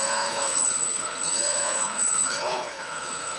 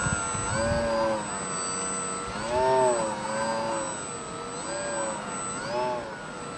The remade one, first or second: first